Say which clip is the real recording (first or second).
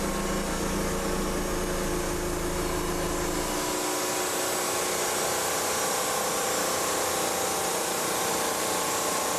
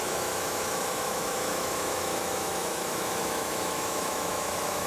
first